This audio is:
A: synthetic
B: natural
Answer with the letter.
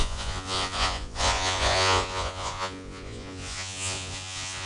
A